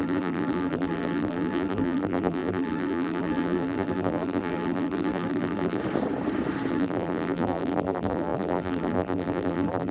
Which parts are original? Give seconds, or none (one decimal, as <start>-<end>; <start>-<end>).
5.8-6.7